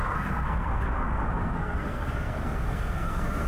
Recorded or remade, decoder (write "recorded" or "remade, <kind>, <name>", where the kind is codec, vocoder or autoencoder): remade, codec, SNAC